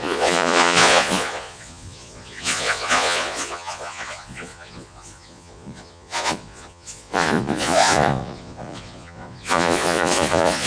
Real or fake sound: fake